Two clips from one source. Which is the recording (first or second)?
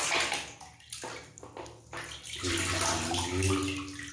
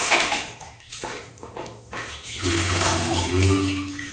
first